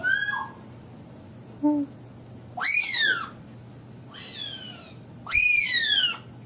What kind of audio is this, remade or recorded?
recorded